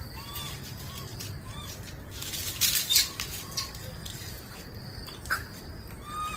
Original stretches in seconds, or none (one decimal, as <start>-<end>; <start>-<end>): 0.0-1.1; 1.7-4.0; 5.6-6.4

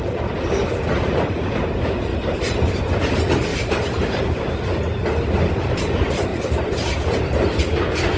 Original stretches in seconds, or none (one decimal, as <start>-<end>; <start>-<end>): 0.0-2.1; 2.9-3.5; 4.4-6.3

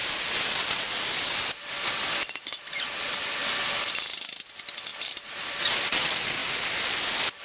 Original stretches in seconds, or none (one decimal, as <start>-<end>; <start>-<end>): 3.3-4.9; 5.6-7.4

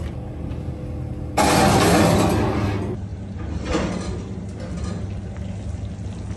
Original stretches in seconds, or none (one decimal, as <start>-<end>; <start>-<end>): 0.0-6.4